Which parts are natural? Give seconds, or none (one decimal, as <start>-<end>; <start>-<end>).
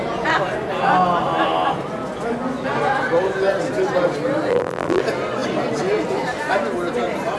0.0-4.5; 5.0-7.4